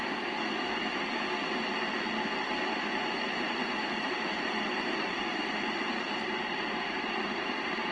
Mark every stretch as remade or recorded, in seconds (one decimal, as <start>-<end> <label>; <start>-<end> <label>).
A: 0.0-3.2 recorded; 3.2-7.9 remade